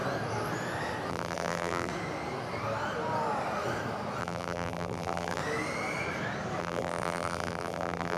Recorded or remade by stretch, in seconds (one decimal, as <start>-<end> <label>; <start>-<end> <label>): 0.0-1.1 recorded; 1.1-1.9 remade; 1.9-4.2 recorded; 4.2-5.4 remade; 5.4-6.6 recorded; 6.6-8.2 remade